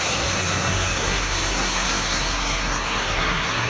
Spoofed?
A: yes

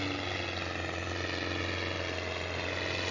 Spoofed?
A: no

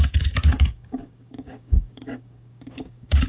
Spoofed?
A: yes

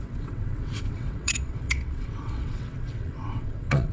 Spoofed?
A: yes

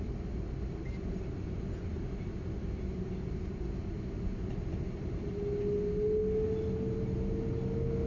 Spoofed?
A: no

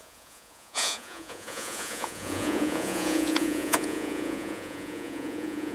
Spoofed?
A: yes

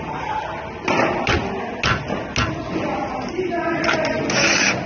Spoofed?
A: no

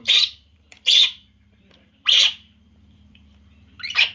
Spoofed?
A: yes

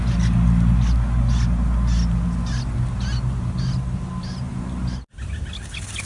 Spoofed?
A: no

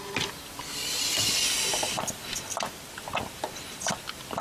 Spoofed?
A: no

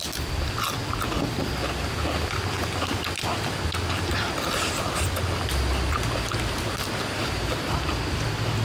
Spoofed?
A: no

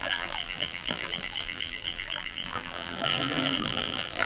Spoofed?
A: yes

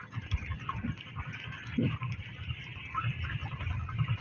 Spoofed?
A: no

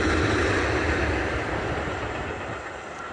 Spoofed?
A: no